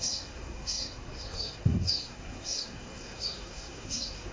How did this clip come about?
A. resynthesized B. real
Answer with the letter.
A